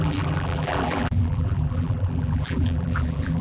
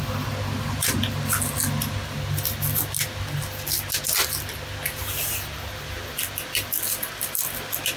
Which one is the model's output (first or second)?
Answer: first